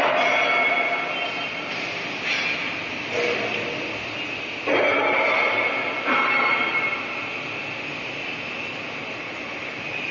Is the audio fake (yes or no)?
no